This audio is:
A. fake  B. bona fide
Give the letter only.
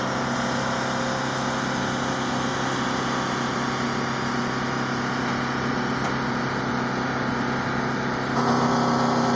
B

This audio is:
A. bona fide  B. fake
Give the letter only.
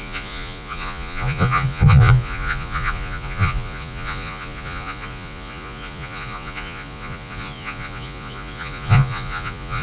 B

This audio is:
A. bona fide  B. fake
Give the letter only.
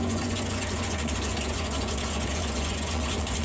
B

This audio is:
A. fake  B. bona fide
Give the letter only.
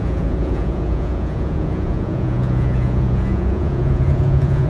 A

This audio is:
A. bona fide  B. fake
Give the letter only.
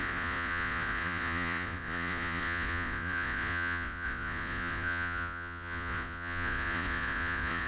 B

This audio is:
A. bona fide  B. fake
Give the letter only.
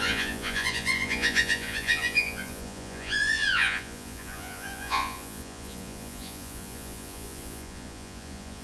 B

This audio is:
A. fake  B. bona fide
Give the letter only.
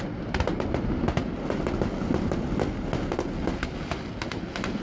B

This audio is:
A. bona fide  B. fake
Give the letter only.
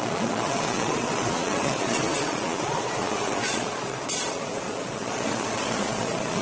B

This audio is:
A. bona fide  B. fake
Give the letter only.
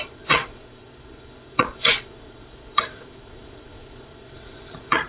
B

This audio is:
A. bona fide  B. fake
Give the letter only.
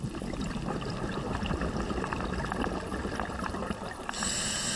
A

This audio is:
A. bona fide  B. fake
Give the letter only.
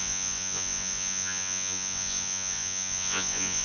B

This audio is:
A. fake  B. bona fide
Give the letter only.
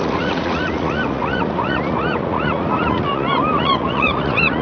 A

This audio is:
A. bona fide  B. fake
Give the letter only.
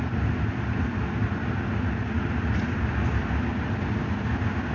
A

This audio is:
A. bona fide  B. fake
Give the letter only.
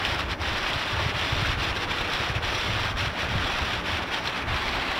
A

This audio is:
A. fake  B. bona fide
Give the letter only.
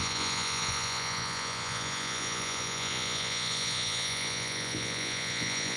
A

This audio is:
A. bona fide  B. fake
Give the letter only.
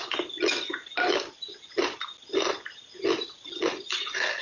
A